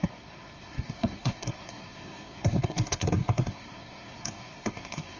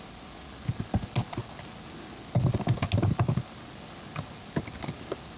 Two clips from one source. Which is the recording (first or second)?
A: second